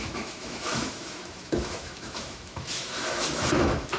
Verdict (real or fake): fake